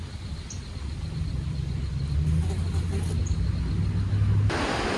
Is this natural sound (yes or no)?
yes